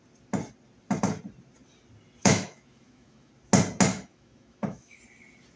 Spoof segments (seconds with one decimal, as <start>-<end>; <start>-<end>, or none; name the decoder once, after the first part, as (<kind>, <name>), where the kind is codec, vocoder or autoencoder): 2.2-3.3 (autoencoder, DAC-VAE); 3.9-5.0